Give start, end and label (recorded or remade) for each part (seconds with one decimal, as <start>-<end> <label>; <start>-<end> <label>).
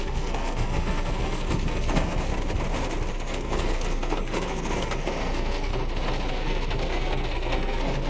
0.0-2.3 remade; 2.3-3.1 recorded; 3.1-5.7 remade; 5.7-6.3 recorded; 6.3-8.1 remade